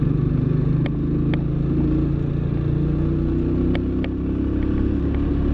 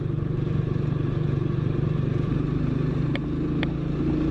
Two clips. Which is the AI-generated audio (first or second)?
second